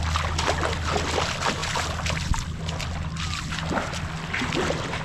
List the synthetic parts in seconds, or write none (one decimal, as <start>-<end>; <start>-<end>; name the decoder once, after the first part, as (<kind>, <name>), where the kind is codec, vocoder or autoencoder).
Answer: none